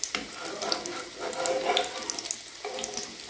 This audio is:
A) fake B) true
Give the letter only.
B